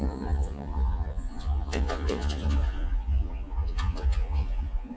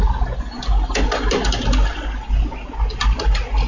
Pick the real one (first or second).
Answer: second